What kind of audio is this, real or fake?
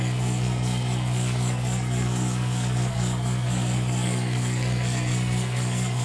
fake